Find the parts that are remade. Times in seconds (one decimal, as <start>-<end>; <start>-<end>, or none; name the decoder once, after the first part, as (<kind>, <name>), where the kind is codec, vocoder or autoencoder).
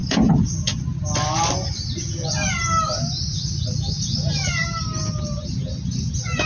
0.0-0.5 (vocoder, Vocos)